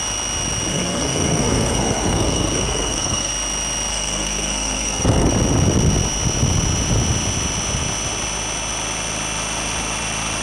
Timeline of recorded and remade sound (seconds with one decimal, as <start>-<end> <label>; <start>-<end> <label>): 0.0-0.7 recorded; 0.7-3.3 remade; 3.3-3.9 recorded; 3.9-5.3 remade; 5.3-10.4 recorded

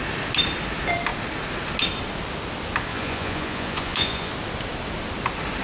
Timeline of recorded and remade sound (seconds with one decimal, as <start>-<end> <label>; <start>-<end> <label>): 0.0-2.9 recorded; 2.9-4.3 remade; 4.3-5.6 recorded

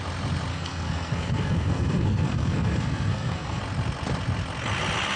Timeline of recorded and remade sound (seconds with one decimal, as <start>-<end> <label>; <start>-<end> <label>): 0.0-0.5 recorded; 0.5-3.6 remade; 3.6-5.2 recorded

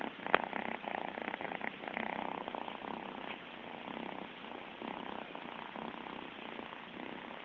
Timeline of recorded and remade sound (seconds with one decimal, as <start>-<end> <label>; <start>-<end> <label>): 0.0-7.4 recorded

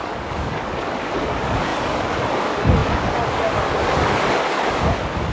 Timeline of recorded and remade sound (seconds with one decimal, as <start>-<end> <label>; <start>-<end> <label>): 0.0-5.3 remade